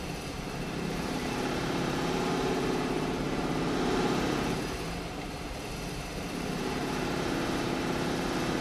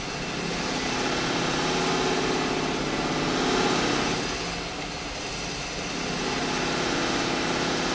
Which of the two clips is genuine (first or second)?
second